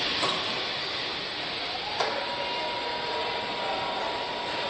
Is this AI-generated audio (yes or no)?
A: no